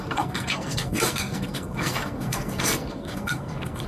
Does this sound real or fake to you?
fake